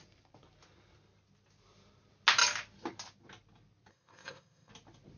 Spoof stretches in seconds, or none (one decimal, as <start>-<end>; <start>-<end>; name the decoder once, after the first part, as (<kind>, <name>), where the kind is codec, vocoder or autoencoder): 3.9-4.7 (codec, ZipCodec)